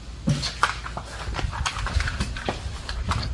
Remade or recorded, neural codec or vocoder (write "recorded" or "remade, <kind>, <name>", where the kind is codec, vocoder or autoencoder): recorded